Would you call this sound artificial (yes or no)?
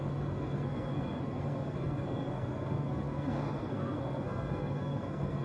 yes